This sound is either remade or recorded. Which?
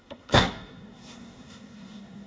remade